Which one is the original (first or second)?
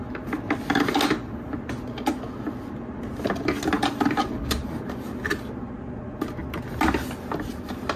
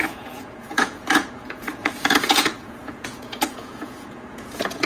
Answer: first